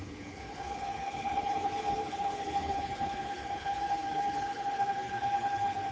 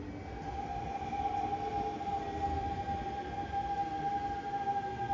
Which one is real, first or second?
second